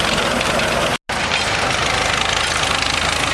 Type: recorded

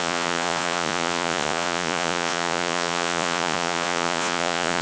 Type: remade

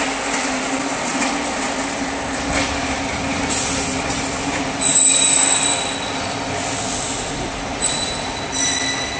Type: recorded